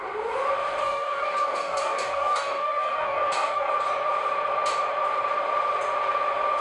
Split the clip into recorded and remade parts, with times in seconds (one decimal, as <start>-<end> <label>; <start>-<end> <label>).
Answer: 0.0-0.8 recorded; 0.8-3.7 remade; 3.7-6.6 recorded